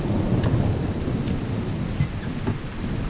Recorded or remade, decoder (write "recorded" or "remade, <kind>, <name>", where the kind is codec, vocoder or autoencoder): remade, vocoder, BigVGAN v2